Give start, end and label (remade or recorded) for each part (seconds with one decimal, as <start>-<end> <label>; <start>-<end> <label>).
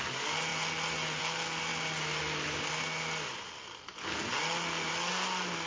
0.0-5.7 recorded